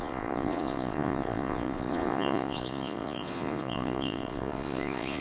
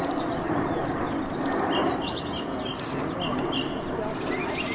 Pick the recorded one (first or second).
second